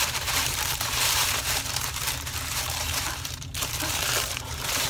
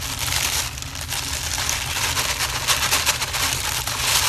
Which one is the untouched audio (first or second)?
second